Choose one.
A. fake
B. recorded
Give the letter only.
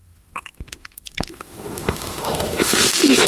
A